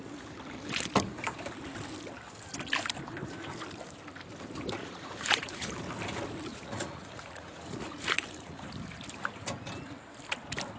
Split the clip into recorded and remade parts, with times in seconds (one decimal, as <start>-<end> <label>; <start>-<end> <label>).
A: 0.0-4.8 recorded; 4.8-5.7 remade; 5.7-6.5 recorded; 6.5-8.7 remade; 8.7-10.8 recorded